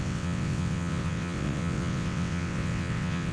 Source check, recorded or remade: remade